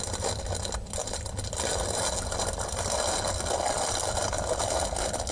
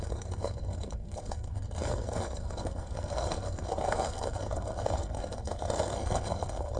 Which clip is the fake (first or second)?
second